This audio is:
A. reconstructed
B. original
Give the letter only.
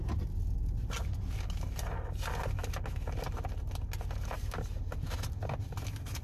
B